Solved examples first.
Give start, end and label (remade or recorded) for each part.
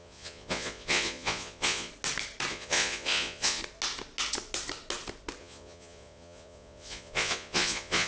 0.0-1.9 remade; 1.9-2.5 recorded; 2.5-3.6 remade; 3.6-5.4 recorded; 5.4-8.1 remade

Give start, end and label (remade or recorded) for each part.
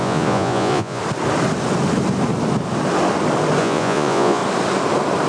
0.0-1.0 remade; 1.0-3.6 recorded; 3.6-4.4 remade; 4.4-5.3 recorded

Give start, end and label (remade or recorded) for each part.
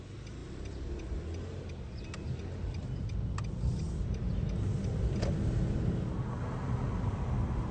0.0-7.7 recorded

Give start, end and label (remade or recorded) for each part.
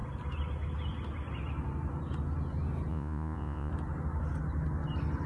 0.0-2.9 recorded; 2.9-3.7 remade; 3.7-5.3 recorded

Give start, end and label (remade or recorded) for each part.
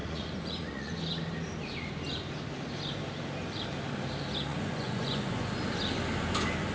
0.0-0.9 remade; 0.9-4.5 recorded; 4.5-5.5 remade; 5.5-6.7 recorded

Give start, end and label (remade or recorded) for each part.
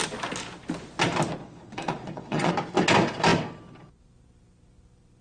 0.0-1.4 recorded; 1.4-2.5 remade; 2.5-5.2 recorded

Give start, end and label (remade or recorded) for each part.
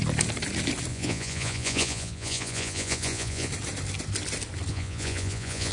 0.0-0.9 recorded; 0.9-3.5 remade; 3.5-4.7 recorded; 4.7-5.7 remade